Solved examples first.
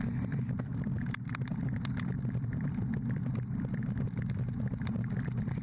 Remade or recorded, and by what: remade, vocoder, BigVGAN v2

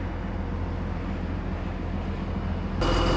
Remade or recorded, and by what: recorded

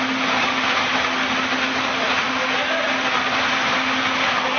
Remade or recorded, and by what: recorded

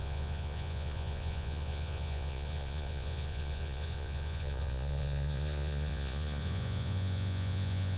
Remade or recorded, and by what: remade, vocoder, Vocos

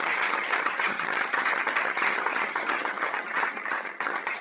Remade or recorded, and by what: remade, vocoder, HiFi-GAN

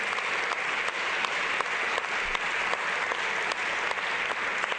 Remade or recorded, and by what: recorded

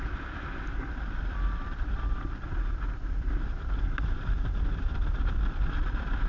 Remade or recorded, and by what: remade, vocoder, BigVGAN v2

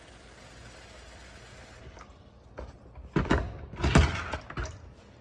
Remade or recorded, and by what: recorded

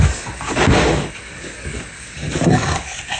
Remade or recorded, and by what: remade, codec, DAC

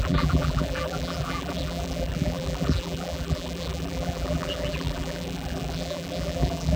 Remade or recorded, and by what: remade, vocoder, BigVGAN v2